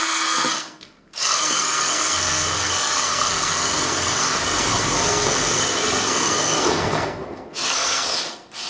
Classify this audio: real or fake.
fake